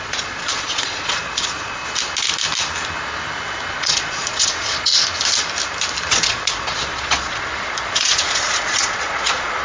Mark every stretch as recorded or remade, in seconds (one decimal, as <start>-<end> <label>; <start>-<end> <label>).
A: 0.0-1.8 remade; 1.8-3.7 recorded; 3.7-4.9 remade; 4.9-6.1 recorded; 6.1-9.6 remade